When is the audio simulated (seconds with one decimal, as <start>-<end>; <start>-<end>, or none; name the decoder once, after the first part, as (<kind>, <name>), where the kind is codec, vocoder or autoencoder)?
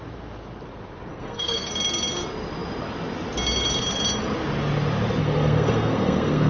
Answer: 1.1-1.7 (codec, SNAC); 5.2-6.5